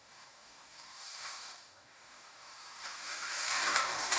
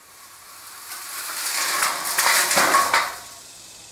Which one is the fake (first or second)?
first